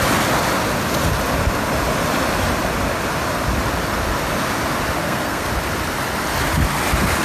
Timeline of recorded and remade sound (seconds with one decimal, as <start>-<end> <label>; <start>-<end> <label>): 0.0-5.0 recorded; 5.0-5.5 remade; 5.5-7.2 recorded